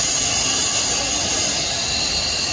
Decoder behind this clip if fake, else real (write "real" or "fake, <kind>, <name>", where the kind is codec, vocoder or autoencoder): real